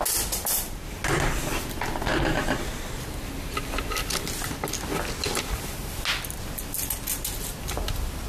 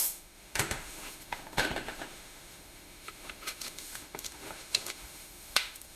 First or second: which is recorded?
first